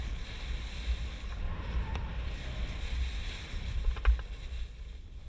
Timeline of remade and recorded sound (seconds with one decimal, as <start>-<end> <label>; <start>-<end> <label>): 0.0-3.2 recorded; 3.2-3.7 remade; 3.7-5.3 recorded